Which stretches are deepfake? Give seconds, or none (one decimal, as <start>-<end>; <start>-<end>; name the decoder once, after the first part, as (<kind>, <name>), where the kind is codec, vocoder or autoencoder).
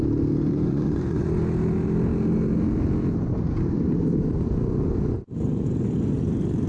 0.5-1.3 (vocoder, Vocos)